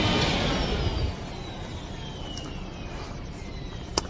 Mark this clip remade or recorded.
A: recorded